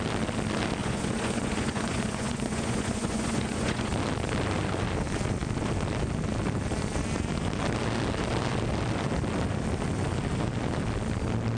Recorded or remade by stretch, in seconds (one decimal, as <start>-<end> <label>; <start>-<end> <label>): 0.0-0.8 recorded; 0.8-3.9 remade; 3.9-11.6 recorded